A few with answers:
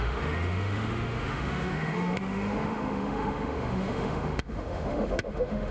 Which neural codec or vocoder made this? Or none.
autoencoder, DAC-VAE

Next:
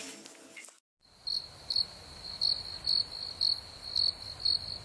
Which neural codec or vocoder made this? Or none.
none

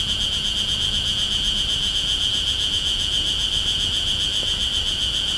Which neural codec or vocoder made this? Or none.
none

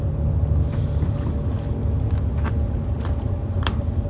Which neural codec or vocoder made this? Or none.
none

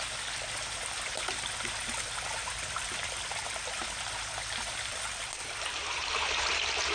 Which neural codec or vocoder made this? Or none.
none